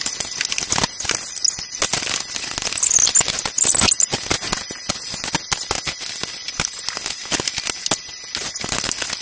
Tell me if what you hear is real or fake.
real